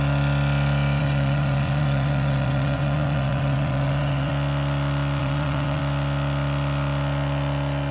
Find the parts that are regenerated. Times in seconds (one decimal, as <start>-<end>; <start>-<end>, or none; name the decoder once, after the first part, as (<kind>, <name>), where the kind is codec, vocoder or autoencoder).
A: 1.0-4.3 (vocoder, WaveNeXt); 5.2-5.8